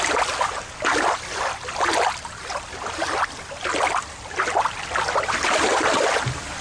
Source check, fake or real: real